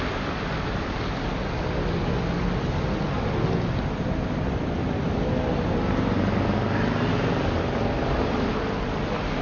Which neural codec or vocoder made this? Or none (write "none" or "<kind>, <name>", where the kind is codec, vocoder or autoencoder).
none